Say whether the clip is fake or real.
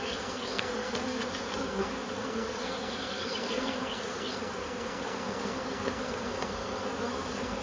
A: fake